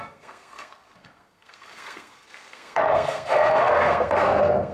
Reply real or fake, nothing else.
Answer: fake